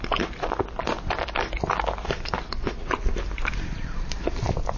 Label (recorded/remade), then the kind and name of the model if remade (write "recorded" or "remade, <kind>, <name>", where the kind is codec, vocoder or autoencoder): recorded